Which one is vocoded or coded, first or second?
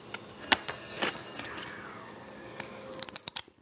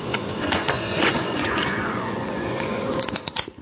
second